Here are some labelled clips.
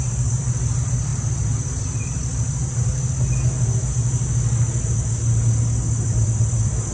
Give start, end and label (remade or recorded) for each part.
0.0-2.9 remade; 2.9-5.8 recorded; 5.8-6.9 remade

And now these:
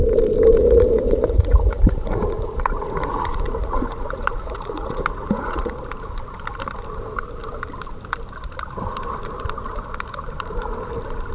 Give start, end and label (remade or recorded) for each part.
0.0-0.6 recorded; 0.6-5.7 remade; 5.7-11.3 recorded

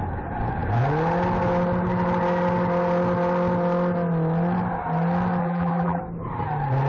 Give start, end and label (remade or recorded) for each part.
0.0-5.4 recorded; 5.4-6.0 remade; 6.0-6.9 recorded

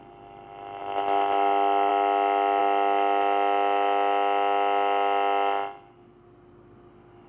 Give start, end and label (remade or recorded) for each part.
0.0-7.3 recorded